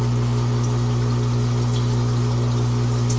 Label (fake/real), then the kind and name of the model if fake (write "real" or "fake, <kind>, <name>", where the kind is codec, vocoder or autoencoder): real